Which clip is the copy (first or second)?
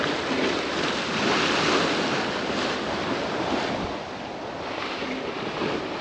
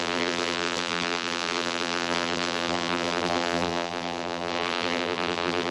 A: second